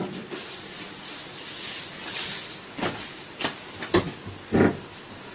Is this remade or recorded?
recorded